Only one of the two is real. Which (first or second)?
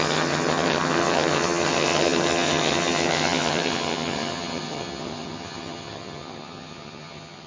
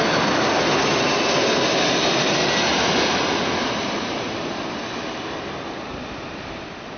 second